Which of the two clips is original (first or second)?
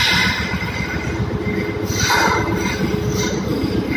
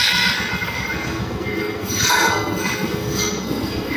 first